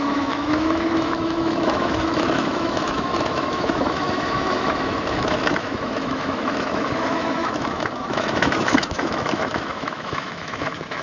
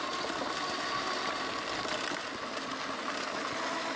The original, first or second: second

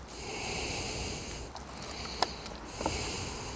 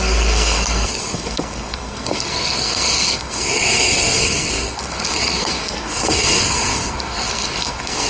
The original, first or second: first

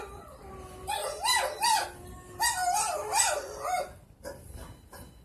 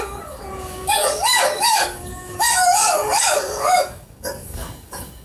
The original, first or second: first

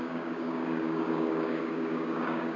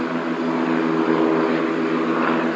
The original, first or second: second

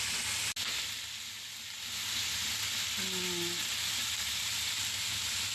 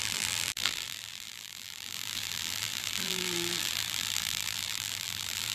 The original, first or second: first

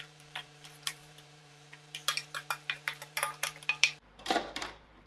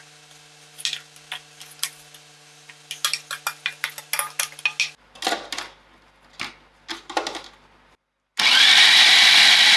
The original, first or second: second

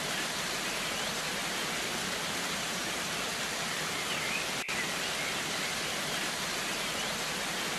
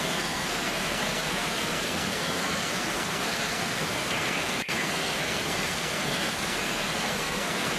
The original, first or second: first